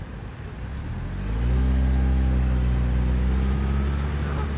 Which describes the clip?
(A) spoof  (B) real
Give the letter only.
B